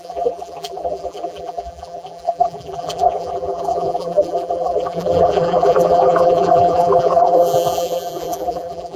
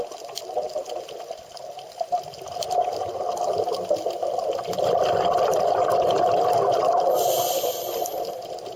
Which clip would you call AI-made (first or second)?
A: first